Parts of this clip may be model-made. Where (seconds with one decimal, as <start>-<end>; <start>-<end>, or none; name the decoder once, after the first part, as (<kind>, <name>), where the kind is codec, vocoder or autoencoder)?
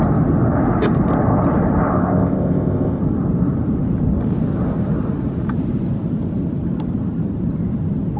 1.9-3.0 (codec, ZipCodec)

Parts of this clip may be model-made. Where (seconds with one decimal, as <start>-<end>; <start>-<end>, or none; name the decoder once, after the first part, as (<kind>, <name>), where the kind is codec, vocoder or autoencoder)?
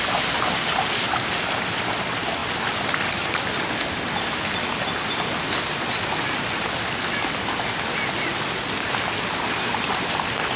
none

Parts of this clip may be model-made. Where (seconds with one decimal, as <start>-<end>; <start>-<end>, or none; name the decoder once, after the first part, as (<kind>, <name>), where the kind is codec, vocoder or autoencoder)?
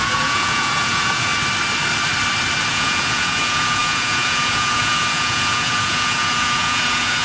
0.0-1.3 (vocoder, Vocos); 2.7-7.2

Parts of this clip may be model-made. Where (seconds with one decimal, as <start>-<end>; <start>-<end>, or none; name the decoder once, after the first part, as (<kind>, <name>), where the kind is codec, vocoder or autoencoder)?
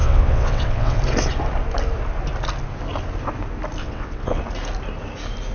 0.0-1.0 (vocoder, WaveNeXt); 3.8-4.4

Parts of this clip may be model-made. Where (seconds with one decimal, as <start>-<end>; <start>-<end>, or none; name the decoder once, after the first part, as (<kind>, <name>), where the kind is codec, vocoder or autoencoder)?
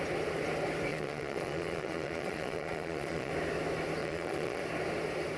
0.9-3.3 (vocoder, Vocos); 4.0-4.6